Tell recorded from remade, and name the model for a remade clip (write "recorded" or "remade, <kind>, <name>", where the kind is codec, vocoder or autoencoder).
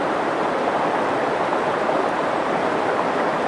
recorded